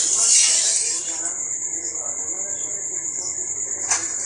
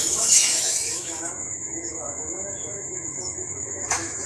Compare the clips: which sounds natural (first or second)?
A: first